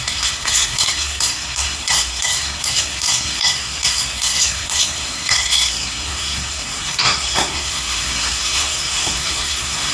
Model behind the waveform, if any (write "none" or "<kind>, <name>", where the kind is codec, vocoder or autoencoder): codec, SNAC